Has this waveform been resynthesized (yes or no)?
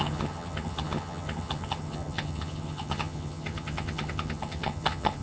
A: yes